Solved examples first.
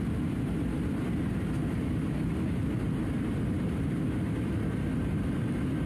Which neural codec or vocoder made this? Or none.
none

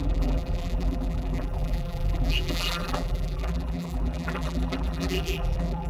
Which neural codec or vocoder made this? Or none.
vocoder, BigVGAN v2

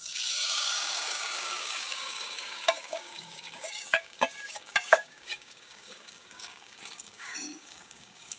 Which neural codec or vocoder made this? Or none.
codec, DAC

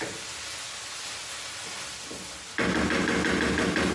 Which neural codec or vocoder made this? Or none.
none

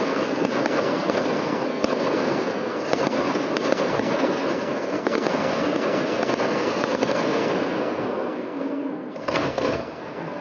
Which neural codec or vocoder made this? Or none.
codec, SNAC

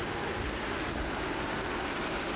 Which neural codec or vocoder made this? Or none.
none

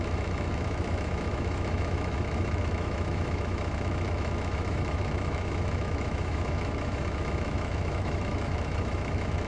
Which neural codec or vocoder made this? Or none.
autoencoder, DAC-VAE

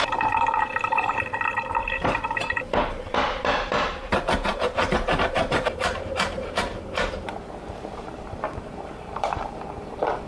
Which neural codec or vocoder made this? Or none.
vocoder, BigVGAN v2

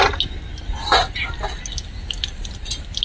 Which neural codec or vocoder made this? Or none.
none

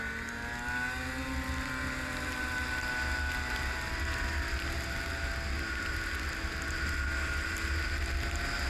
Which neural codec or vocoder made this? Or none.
none